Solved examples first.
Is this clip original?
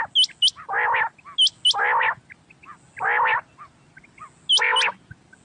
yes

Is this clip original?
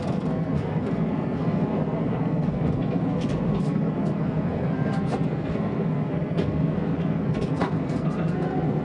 no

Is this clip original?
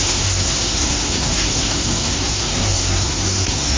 no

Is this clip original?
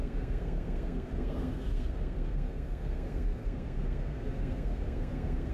no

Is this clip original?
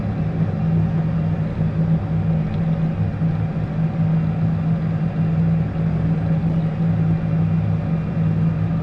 yes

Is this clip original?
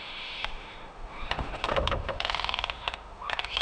no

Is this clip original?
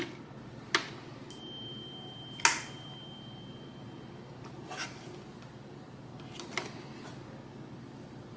yes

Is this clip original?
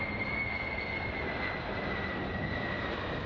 yes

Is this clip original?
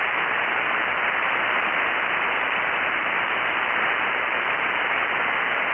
yes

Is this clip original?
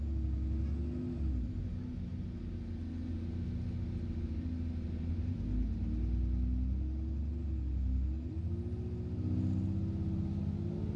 yes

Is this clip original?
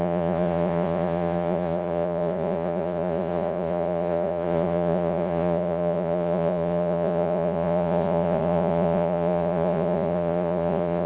no